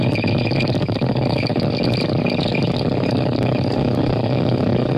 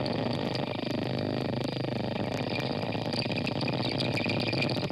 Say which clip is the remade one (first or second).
first